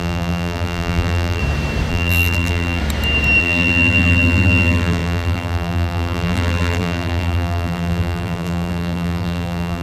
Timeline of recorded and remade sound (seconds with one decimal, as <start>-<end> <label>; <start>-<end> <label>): 0.0-1.4 remade; 1.4-1.9 recorded; 1.9-2.8 remade; 2.8-3.4 recorded; 3.4-9.8 remade